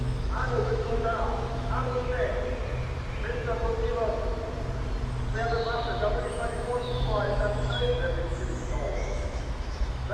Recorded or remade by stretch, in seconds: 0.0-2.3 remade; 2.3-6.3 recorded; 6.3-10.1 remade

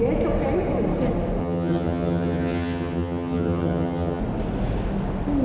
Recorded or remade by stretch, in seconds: 0.0-1.4 recorded; 1.4-4.2 remade; 4.2-5.4 recorded